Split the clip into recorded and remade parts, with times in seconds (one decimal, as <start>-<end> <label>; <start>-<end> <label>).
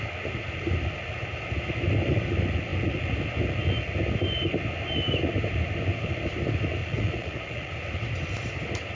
0.0-6.8 recorded; 6.8-7.7 remade; 7.7-8.9 recorded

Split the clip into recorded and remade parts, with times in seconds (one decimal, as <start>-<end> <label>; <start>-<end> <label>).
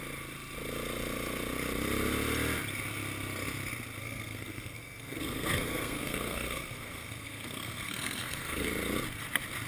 0.0-4.0 recorded; 4.0-8.7 remade; 8.7-9.7 recorded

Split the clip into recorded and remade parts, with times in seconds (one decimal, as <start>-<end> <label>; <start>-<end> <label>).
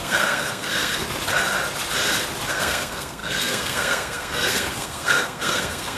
0.0-1.0 remade; 1.0-2.5 recorded; 2.5-6.0 remade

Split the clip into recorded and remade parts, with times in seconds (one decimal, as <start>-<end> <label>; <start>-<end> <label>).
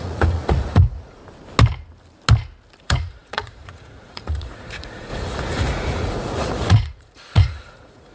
0.0-1.2 remade; 1.2-2.8 recorded; 2.8-8.1 remade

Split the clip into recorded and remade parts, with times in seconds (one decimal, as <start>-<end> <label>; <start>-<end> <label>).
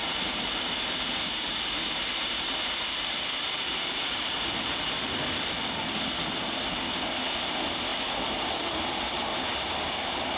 0.0-5.1 remade; 5.1-10.4 recorded